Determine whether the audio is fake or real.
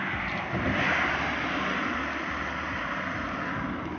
real